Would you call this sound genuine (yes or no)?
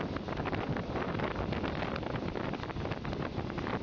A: yes